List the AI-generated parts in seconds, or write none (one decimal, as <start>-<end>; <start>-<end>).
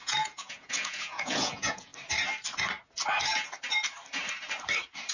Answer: 0.0-1.9